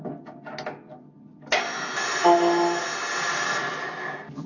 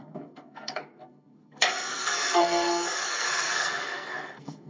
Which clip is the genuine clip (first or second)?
first